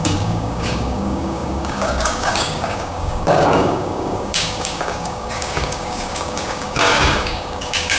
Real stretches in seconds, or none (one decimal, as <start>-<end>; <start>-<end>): none